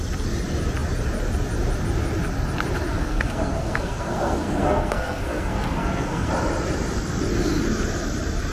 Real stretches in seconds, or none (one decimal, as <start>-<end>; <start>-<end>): 0.0-2.9; 6.3-8.5